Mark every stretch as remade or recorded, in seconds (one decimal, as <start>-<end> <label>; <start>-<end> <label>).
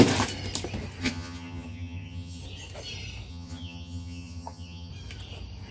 0.0-1.0 recorded; 1.0-2.4 remade; 2.4-3.3 recorded; 3.3-4.9 remade; 4.9-5.7 recorded